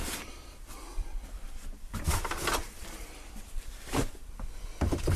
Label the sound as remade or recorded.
remade